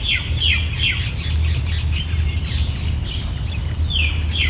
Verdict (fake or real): real